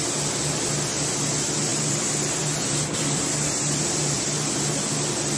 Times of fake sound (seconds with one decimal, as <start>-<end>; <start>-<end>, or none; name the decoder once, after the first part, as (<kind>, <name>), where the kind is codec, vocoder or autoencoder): 1.7-4.9 (vocoder, BigVGAN v2)